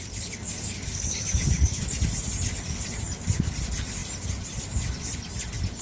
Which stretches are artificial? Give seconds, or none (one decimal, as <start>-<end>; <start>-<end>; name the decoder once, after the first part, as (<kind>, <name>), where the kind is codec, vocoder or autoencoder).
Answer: 0.4-2.0 (codec, DAC)